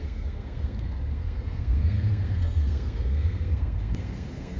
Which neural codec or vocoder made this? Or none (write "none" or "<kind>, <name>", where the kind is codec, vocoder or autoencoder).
codec, SNAC